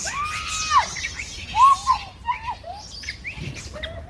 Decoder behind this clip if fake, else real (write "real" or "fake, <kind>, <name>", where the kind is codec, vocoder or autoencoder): real